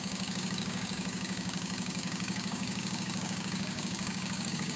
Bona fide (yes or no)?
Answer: no